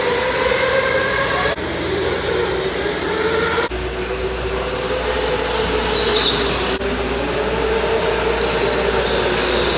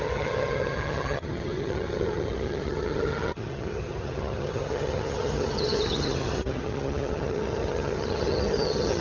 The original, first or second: first